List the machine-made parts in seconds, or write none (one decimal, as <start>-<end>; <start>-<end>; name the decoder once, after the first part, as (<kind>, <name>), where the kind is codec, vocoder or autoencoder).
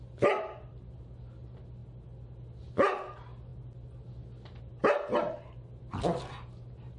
none